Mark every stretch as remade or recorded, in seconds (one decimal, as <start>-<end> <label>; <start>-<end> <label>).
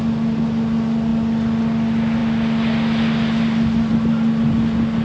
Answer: 0.0-5.0 recorded